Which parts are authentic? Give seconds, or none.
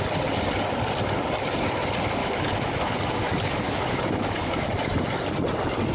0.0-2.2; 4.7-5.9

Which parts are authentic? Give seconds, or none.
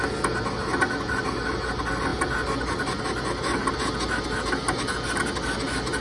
0.0-6.0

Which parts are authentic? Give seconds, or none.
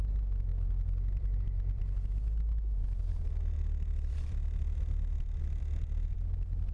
0.0-0.5; 1.8-2.8; 5.6-6.7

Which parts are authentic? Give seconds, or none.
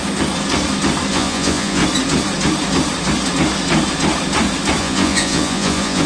0.0-1.1; 1.8-4.8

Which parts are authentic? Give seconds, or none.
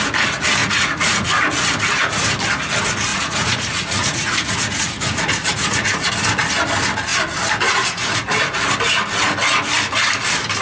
0.0-0.6; 1.3-3.1; 6.1-10.6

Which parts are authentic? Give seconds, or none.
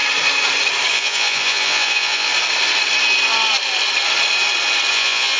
0.0-0.9; 2.3-4.9